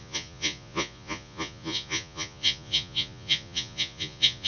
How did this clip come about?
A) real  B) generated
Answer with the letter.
B